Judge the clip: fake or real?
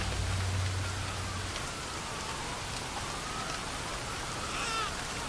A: real